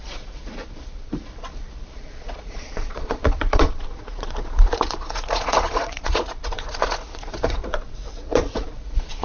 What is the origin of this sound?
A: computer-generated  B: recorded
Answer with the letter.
A